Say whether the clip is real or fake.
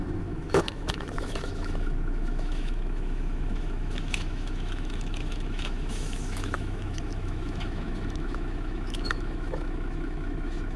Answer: fake